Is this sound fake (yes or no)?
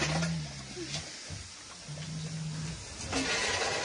no